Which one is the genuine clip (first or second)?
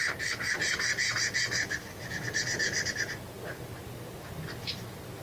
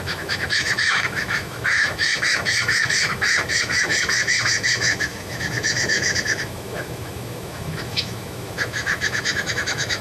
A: first